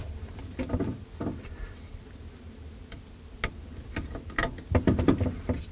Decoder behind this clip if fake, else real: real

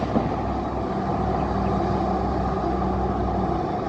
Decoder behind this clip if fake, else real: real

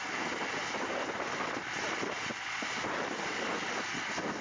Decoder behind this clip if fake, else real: real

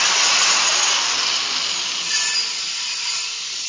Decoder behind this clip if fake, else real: real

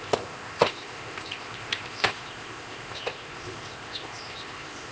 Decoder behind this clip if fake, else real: fake, codec, ZipCodec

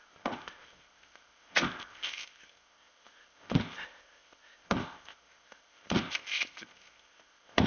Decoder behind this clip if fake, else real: fake, codec, ZipCodec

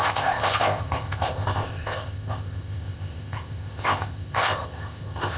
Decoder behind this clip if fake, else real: fake, codec, ZipCodec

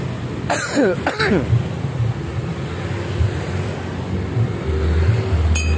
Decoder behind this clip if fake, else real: real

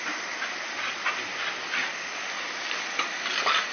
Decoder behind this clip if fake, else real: real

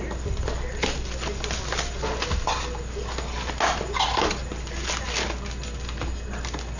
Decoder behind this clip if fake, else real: real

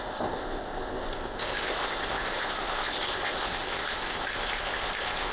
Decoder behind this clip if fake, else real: fake, codec, ZipCodec